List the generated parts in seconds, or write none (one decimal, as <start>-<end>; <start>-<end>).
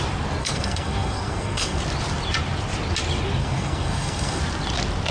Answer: 0.4-1.8; 3.4-4.4